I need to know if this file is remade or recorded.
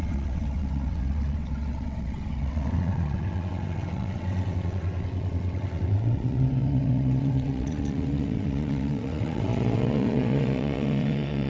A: remade